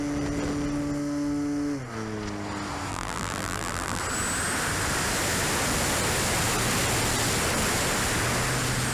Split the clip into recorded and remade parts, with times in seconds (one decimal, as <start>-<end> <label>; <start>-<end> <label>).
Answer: 0.0-2.9 recorded; 2.9-4.0 remade; 4.0-8.9 recorded